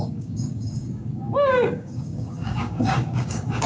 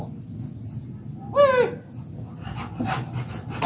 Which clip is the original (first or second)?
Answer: second